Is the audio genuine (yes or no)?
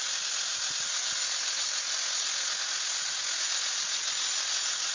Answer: yes